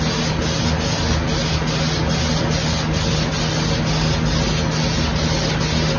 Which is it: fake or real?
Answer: real